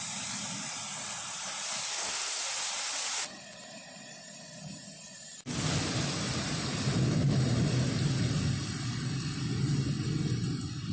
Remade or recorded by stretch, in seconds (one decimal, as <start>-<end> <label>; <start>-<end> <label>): 0.0-1.9 recorded; 1.9-2.4 remade; 2.4-10.9 recorded